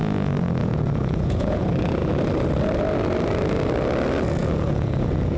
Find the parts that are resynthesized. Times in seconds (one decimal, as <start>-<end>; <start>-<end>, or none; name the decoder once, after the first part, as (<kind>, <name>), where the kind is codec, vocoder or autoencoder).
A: 0.6-1.6 (vocoder, Vocos); 4.4-5.4